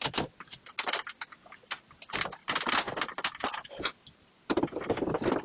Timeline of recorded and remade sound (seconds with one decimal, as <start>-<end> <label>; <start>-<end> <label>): 0.0-5.4 recorded